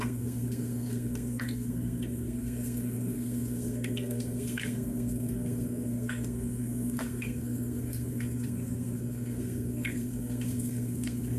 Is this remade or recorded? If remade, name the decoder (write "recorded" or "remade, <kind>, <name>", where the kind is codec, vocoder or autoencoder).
remade, codec, SNAC